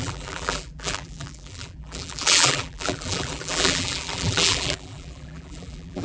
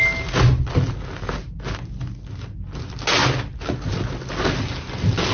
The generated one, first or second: first